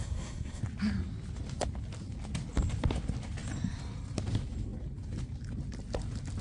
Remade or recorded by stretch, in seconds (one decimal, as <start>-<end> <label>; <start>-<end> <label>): 0.0-0.6 remade; 0.6-6.4 recorded